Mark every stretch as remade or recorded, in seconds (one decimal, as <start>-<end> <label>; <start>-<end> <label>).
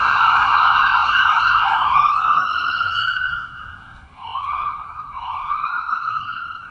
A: 0.0-6.7 remade